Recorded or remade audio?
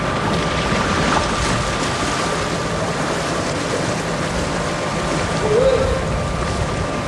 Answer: recorded